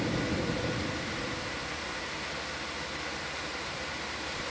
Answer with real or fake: fake